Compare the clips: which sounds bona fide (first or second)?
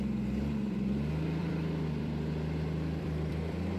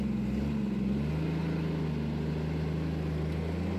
second